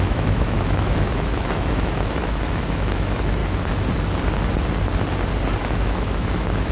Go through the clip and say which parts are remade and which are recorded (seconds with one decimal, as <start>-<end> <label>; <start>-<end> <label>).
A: 0.0-3.4 remade; 3.4-5.6 recorded; 5.6-6.7 remade

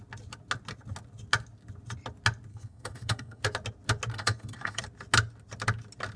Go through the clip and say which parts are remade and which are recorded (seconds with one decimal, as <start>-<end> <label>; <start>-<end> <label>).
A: 0.0-2.5 recorded; 2.5-3.4 remade; 3.4-4.1 recorded; 4.1-4.8 remade; 4.8-6.2 recorded